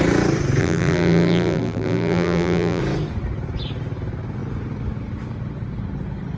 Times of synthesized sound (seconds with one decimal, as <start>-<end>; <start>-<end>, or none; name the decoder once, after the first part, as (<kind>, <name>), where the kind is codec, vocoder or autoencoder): 0.6-2.8 (vocoder, BigVGAN v2)